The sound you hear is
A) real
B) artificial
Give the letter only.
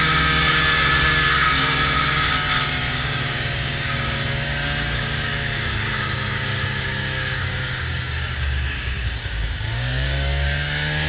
B